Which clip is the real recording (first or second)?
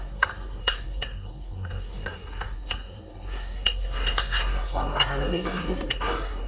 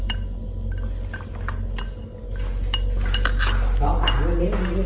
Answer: second